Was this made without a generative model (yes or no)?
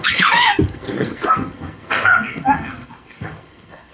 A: no